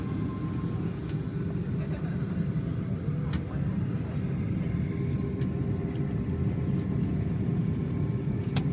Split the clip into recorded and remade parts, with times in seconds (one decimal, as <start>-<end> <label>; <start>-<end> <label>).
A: 0.0-1.3 remade; 1.3-6.5 recorded; 6.5-8.7 remade